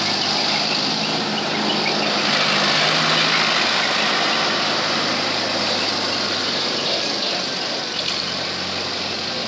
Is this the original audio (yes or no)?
yes